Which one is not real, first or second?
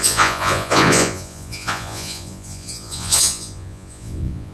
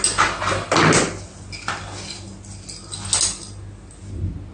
first